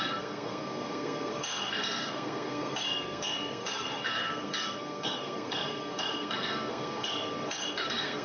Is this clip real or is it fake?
fake